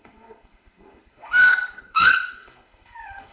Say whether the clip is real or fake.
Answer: fake